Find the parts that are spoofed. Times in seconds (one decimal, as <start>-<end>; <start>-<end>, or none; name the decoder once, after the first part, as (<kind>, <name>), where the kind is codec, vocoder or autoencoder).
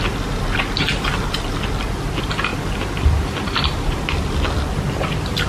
none